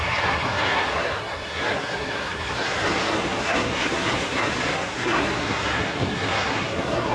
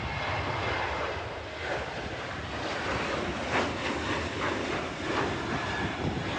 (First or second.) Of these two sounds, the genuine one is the second